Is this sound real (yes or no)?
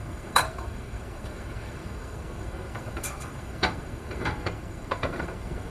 no